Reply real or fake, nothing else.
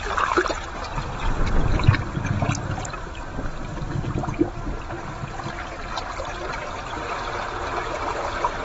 real